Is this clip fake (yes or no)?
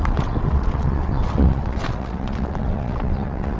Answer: yes